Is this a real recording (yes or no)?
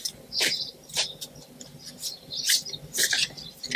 yes